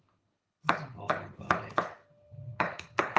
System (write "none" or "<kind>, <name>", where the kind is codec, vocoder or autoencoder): codec, HILCodec